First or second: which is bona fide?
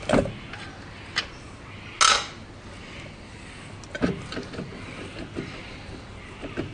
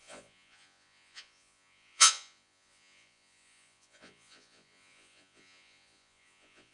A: first